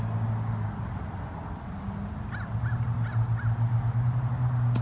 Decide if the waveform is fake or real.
real